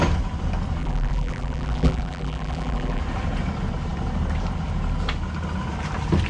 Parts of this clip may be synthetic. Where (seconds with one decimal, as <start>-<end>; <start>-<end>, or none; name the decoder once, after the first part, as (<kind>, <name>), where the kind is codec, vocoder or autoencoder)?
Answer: 0.8-3.0 (vocoder, BigVGAN v2)